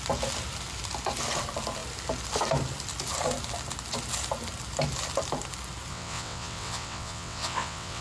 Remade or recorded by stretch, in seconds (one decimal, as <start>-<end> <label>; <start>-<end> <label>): 0.0-5.9 recorded; 5.9-8.0 remade